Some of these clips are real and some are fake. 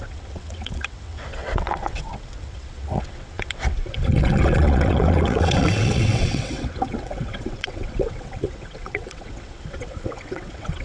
fake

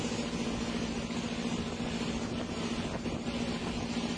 real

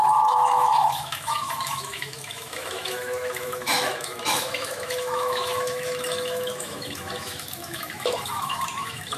fake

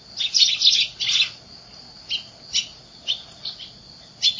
real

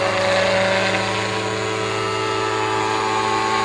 real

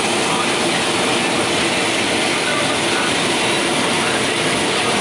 real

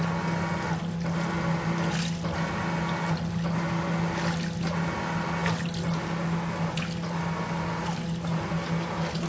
real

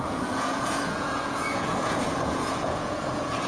fake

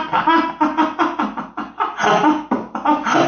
real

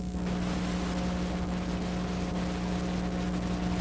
real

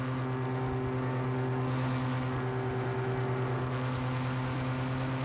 real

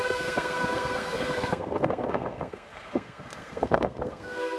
fake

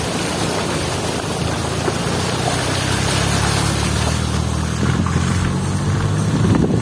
real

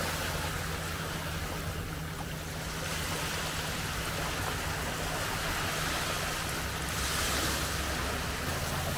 real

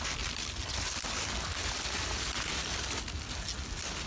real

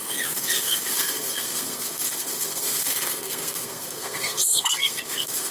fake